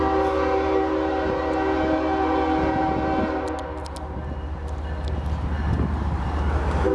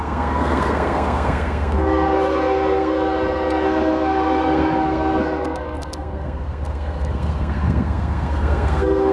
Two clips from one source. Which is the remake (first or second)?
second